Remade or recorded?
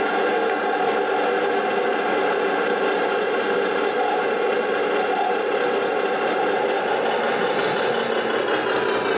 recorded